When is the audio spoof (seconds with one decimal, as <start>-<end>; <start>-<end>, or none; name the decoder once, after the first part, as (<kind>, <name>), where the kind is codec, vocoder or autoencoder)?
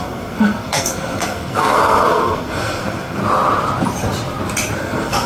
0.0-3.2 (codec, SNAC); 4.8-5.3